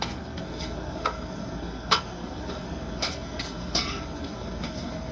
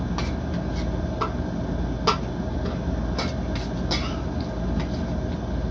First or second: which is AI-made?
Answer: first